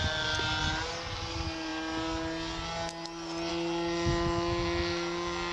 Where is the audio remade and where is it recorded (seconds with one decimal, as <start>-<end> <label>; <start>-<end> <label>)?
0.0-5.5 recorded